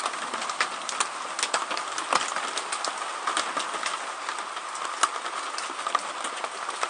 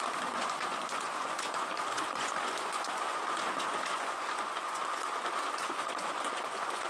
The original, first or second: first